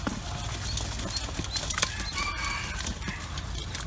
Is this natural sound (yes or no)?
yes